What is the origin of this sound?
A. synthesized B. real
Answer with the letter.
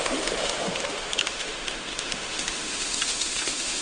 A